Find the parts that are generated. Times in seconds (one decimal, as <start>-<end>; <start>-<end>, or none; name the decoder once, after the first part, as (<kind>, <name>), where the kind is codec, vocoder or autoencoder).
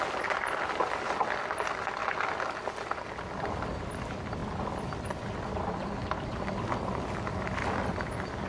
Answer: none